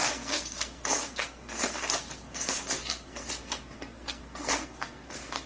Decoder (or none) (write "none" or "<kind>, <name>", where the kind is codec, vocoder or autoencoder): codec, SNAC